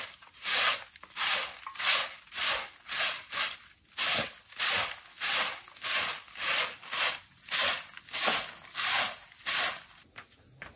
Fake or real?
real